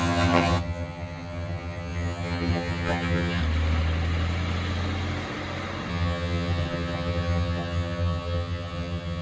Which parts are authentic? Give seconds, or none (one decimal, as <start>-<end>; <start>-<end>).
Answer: 3.4-5.9

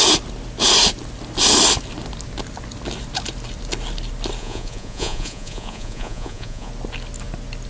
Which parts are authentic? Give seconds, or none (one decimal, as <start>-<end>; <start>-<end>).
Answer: 0.0-4.4; 6.7-7.7

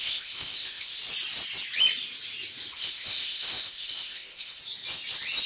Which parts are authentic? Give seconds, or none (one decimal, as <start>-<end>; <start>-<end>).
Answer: 1.0-2.7; 4.6-5.5

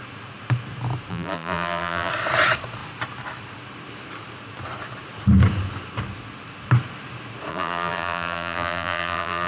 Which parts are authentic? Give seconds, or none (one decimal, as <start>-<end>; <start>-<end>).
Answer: 0.0-1.1; 2.1-7.5